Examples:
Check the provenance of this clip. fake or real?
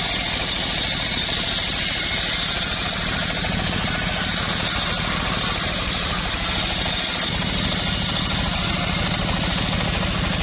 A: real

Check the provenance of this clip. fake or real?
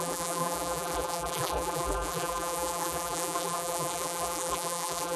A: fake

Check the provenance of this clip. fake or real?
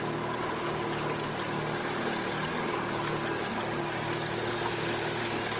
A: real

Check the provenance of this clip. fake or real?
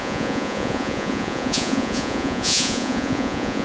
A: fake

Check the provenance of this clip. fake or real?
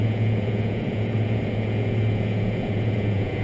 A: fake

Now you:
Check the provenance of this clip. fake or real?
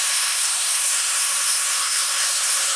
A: fake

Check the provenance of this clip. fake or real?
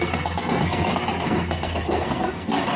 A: fake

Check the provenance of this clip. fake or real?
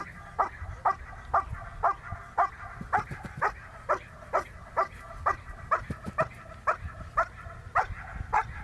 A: real